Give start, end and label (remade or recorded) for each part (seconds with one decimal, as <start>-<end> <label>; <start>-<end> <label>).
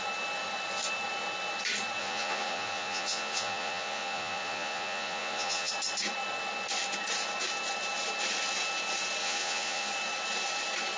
0.0-2.0 recorded; 2.0-5.7 remade; 5.7-9.2 recorded; 9.2-9.9 remade; 9.9-11.0 recorded